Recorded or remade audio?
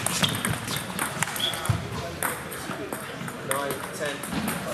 recorded